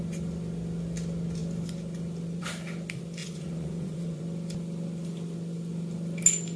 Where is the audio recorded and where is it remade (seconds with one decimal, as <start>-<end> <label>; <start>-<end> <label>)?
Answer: 0.0-3.2 recorded; 3.2-4.2 remade; 4.2-6.6 recorded